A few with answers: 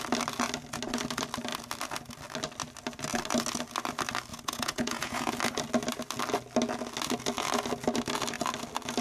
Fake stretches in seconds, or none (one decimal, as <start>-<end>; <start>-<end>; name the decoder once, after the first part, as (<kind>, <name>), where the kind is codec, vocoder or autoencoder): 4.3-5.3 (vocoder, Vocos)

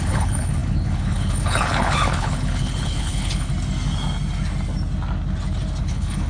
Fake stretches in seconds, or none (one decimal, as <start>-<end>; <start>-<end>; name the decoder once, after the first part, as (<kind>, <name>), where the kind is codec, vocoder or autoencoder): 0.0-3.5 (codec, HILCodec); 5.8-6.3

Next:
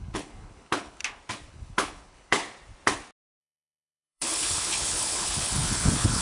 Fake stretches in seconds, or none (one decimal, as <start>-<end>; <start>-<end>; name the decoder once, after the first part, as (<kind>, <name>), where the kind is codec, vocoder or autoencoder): 0.0-1.0 (codec, HILCodec); 1.5-2.4; 3.4-6.2

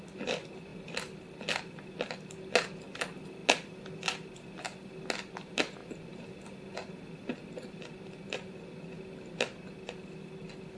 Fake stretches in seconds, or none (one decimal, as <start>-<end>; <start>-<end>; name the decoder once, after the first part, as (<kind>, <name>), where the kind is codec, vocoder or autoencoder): none